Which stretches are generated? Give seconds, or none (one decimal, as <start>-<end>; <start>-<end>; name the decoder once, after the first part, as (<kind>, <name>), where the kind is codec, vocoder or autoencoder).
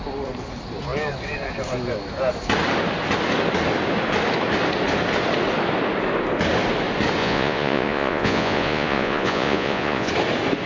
7.2-10.1 (vocoder, Vocos)